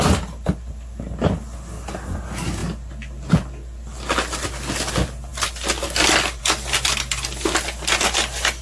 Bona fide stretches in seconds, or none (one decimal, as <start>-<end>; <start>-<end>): 0.0-8.6